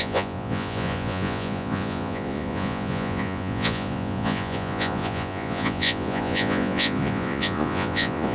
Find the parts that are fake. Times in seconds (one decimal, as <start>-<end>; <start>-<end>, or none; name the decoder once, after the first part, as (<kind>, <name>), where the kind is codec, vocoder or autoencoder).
0.0-8.3 (vocoder, Vocos)